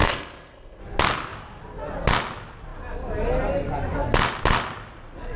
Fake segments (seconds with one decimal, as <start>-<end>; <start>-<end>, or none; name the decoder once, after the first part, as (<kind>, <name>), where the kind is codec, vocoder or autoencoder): 0.0-0.8 (codec, SNAC)